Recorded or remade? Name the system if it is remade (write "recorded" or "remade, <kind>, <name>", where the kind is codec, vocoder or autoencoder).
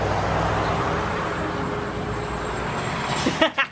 recorded